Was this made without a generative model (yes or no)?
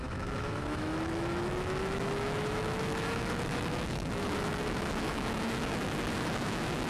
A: no